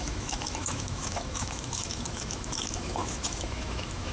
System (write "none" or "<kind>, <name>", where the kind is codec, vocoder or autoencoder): autoencoder, DAC-VAE